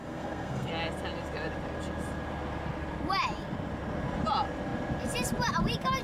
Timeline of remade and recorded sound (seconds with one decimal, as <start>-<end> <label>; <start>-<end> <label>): 0.0-0.7 remade; 0.7-6.0 recorded

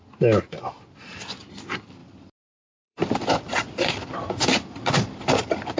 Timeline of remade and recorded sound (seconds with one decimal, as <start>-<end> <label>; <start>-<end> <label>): 0.0-2.0 recorded; 2.0-5.3 remade; 5.3-5.8 recorded